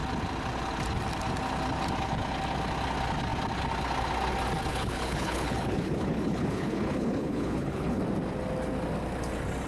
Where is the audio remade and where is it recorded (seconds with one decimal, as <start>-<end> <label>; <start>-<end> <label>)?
0.0-4.7 recorded; 4.7-8.0 remade; 8.0-9.7 recorded